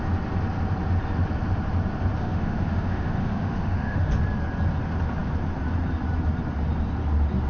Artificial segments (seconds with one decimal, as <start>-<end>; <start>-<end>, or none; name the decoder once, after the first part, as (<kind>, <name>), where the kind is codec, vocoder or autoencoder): 2.2-4.1 (autoencoder, DAC-VAE)